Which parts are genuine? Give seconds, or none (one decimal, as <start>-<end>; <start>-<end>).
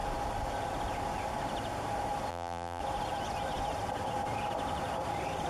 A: 0.0-2.3; 2.8-5.5